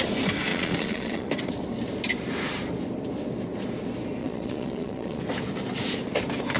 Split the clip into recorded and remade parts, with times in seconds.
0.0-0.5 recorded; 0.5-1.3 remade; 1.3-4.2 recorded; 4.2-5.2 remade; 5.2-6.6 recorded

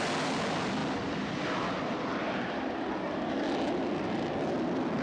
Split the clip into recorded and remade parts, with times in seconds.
0.0-5.0 recorded

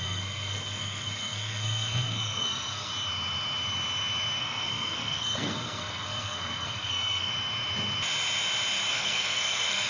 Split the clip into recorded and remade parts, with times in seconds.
0.0-2.9 remade; 2.9-4.4 recorded; 4.4-7.3 remade; 7.3-8.9 recorded; 8.9-9.9 remade

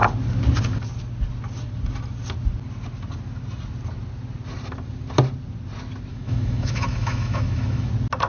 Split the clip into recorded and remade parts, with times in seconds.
0.0-6.1 recorded; 6.1-7.9 remade; 7.9-8.3 recorded

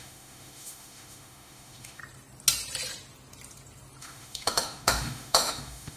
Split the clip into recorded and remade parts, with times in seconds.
0.0-2.0 remade; 2.0-4.0 recorded; 4.0-6.0 remade